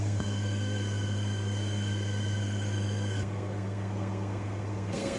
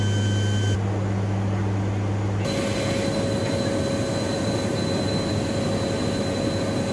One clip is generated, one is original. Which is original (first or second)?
second